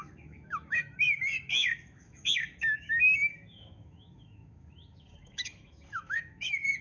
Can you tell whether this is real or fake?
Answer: fake